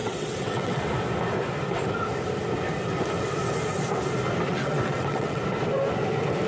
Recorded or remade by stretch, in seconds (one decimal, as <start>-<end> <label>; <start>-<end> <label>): 0.0-0.8 remade; 0.8-4.5 recorded; 4.5-5.4 remade; 5.4-6.5 recorded